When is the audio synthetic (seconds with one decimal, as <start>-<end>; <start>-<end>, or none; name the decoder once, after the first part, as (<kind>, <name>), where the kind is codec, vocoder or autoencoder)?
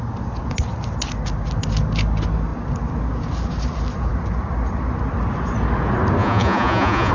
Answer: 6.2-7.1 (vocoder, Vocos)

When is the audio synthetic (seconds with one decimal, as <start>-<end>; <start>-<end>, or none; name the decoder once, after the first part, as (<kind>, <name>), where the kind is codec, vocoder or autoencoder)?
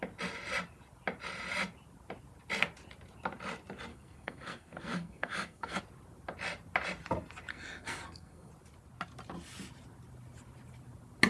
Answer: 3.9-5.8 (codec, SNAC); 7.5-8.5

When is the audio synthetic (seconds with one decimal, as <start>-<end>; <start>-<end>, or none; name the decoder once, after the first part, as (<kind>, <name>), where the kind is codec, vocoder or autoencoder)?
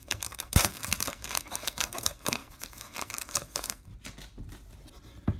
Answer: 0.0-3.9 (codec, SNAC)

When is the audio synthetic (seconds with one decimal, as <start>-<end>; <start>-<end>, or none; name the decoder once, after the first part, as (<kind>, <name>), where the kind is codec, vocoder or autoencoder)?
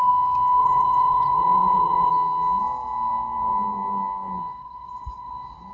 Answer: 0.6-2.1 (vocoder, WaveNeXt); 4.6-5.3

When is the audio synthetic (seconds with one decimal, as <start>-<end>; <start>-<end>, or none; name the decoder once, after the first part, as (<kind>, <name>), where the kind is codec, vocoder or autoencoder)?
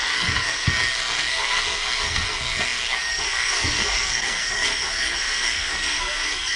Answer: 0.0-6.6 (codec, SNAC)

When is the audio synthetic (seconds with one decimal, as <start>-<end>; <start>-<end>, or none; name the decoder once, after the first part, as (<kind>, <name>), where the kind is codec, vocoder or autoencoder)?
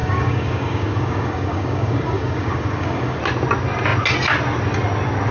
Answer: 0.0-3.2 (codec, DAC)